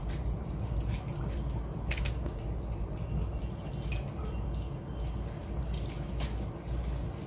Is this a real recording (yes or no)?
yes